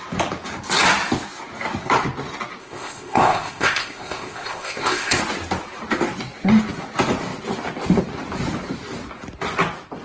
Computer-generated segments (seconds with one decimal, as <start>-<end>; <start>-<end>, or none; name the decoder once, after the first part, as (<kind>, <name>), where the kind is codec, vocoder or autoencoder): 2.6-5.2 (codec, ZipCodec)